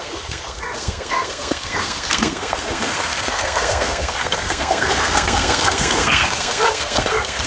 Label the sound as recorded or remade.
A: remade